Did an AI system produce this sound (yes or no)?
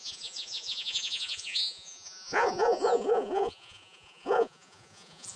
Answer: yes